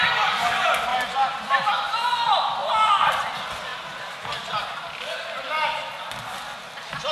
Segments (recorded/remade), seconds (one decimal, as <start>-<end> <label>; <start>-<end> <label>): 0.0-2.6 remade; 2.6-3.1 recorded; 3.1-3.7 remade; 3.7-7.1 recorded